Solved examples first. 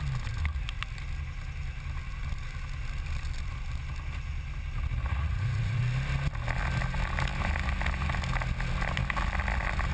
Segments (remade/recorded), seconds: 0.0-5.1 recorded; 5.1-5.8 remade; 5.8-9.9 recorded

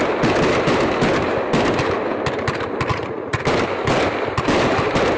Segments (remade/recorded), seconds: 0.0-2.9 recorded; 2.9-3.4 remade; 3.4-5.2 recorded